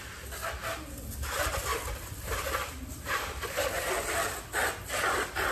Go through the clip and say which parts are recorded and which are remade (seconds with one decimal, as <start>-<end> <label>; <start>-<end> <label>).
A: 0.0-1.7 recorded; 1.7-3.7 remade; 3.7-5.5 recorded